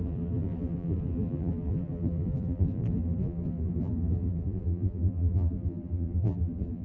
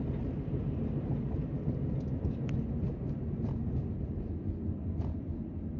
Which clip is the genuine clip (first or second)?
second